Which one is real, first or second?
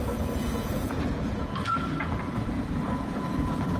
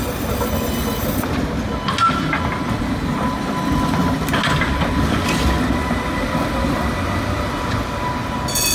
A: second